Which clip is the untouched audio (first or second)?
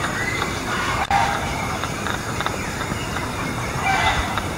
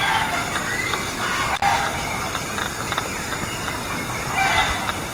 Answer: second